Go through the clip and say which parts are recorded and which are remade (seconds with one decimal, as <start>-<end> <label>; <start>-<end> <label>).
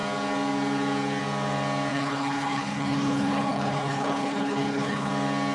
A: 0.0-1.9 recorded; 1.9-5.1 remade; 5.1-5.5 recorded